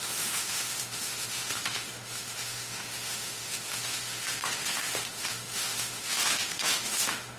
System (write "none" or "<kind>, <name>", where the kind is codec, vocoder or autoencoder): autoencoder, DAC-VAE